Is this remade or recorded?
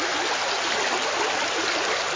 recorded